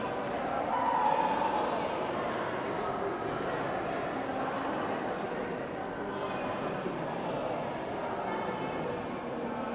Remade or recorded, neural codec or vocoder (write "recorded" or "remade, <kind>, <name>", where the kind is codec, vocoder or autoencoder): recorded